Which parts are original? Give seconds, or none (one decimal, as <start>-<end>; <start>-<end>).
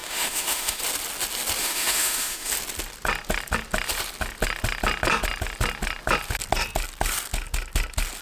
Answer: 0.8-1.6; 2.5-8.2